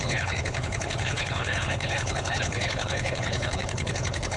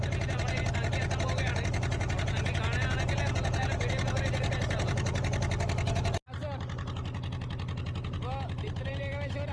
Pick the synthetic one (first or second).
first